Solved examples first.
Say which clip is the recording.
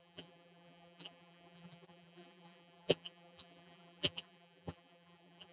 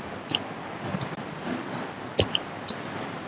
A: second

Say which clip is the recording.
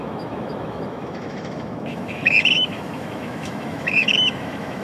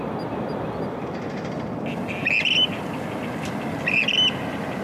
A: second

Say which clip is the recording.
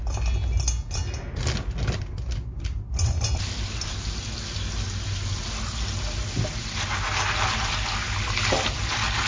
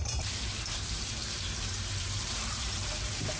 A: first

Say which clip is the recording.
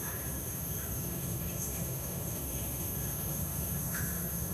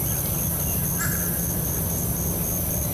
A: second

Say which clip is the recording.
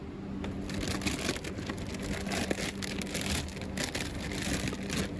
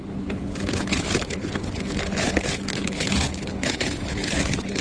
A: first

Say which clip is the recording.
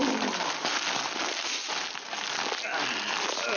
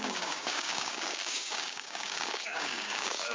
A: first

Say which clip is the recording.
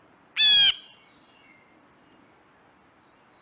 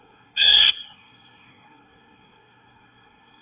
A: first